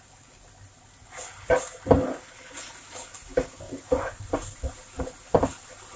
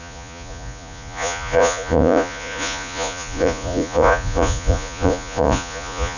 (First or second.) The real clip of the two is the first